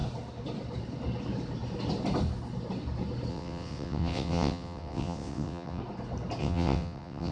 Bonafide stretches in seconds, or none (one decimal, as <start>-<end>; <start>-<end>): 0.0-3.3; 5.8-6.4